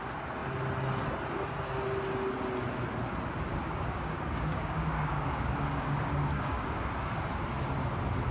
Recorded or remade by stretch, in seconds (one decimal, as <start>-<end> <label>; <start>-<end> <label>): 0.0-3.5 recorded; 3.5-7.3 remade; 7.3-8.3 recorded